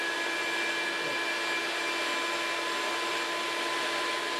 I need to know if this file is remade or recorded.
recorded